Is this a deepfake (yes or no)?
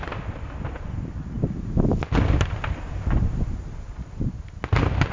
no